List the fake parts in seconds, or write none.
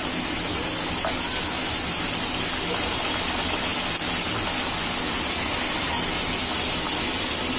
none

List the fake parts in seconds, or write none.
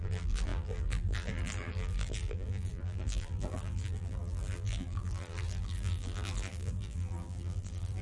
0.0-8.0 (vocoder, BigVGAN v2)